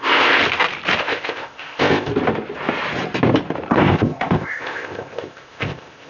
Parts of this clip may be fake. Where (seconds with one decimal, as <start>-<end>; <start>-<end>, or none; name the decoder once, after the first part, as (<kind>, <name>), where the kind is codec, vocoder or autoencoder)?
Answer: 0.0-0.4 (codec, ZipCodec); 1.0-2.1; 3.7-6.1